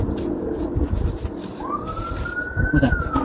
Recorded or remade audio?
recorded